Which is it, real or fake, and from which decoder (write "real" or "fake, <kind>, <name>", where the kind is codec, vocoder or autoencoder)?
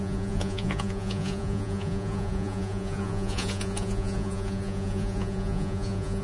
fake, vocoder, Vocos